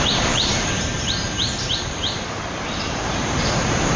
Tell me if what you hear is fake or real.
fake